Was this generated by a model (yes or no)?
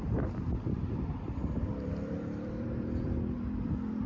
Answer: yes